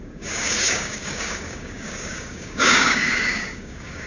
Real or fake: fake